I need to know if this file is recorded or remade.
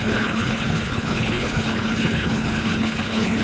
remade